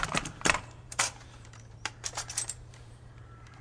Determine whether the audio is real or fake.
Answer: fake